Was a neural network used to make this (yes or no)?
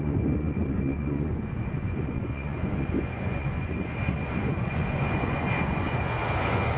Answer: yes